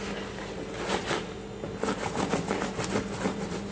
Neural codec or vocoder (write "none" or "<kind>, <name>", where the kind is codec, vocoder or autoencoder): none